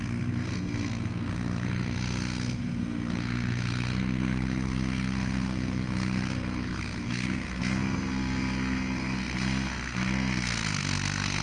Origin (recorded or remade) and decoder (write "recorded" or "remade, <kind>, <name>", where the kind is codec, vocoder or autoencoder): remade, codec, SNAC